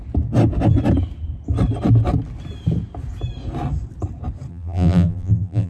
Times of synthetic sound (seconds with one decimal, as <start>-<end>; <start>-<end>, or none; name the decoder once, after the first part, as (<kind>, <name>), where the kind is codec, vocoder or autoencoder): 4.5-5.7 (vocoder, BigVGAN v2)